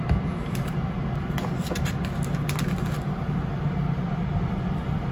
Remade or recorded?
recorded